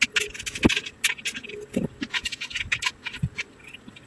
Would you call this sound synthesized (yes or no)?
no